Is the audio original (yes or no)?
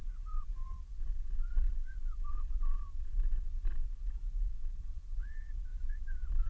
no